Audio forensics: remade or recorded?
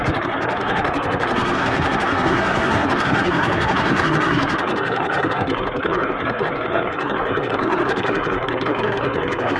remade